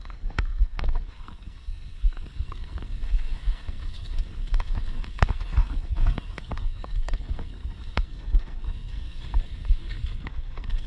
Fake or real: fake